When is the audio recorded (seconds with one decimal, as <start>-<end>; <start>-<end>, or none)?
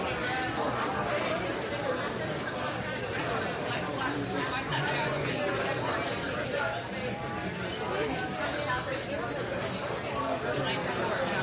0.0-4.7; 5.3-11.4